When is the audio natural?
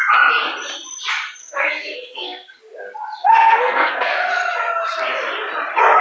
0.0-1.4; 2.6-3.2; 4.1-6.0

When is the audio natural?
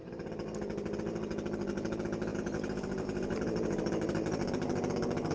0.6-2.3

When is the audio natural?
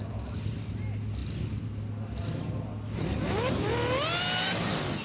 0.0-5.0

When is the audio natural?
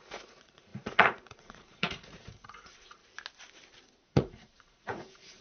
3.0-4.1